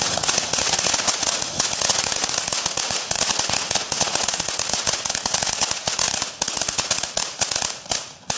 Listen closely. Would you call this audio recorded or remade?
remade